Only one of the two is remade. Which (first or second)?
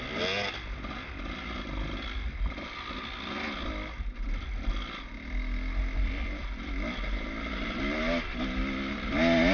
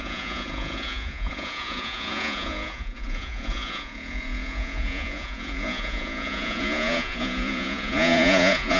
second